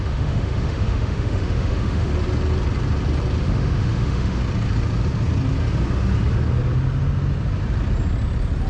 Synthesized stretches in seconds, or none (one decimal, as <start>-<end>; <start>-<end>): 0.0-2.1; 3.4-4.4